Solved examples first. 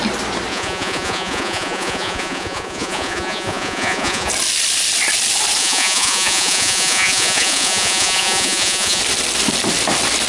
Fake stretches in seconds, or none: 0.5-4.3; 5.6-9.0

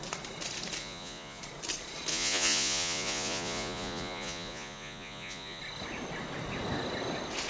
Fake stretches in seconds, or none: 0.8-1.4; 2.1-5.6